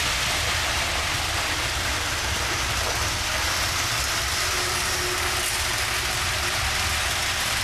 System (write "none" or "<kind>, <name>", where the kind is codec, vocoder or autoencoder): none